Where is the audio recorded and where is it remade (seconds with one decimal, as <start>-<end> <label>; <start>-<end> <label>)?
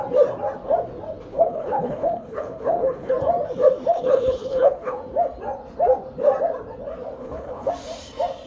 0.0-1.3 recorded; 1.3-3.1 remade; 3.1-3.9 recorded; 3.9-5.0 remade; 5.0-7.2 recorded; 7.2-7.7 remade; 7.7-8.5 recorded